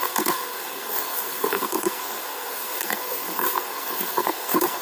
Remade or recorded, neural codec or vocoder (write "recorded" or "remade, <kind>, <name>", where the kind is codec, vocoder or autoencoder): remade, codec, SNAC